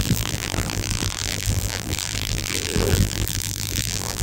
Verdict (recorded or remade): remade